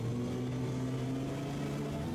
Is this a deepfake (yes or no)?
no